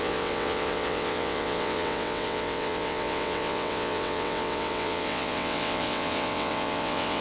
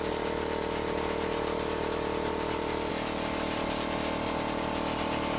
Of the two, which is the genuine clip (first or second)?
second